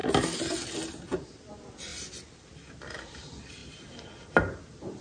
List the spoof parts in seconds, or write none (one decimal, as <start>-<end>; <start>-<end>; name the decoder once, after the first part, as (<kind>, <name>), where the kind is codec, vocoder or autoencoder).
none